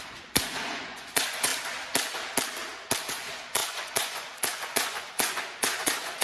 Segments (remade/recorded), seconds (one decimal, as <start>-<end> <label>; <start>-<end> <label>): 0.0-1.5 remade; 1.5-3.1 recorded; 3.1-6.2 remade

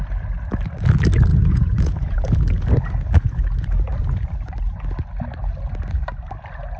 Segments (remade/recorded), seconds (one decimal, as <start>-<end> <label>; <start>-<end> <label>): 0.0-1.3 recorded; 1.3-2.4 remade; 2.4-6.8 recorded

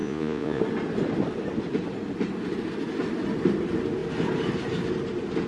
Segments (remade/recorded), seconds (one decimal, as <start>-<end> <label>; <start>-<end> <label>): 0.0-0.6 remade; 0.6-5.5 recorded

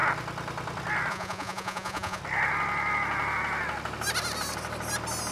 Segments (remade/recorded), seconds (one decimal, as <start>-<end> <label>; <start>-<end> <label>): 0.0-1.1 recorded; 1.1-2.2 remade; 2.2-5.3 recorded

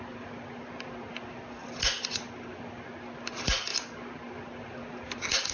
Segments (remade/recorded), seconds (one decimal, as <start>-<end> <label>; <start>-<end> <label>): 0.0-5.5 recorded

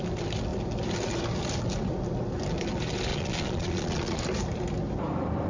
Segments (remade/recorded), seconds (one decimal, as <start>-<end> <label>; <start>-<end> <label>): 0.0-3.1 recorded; 3.1-4.2 remade; 4.2-5.5 recorded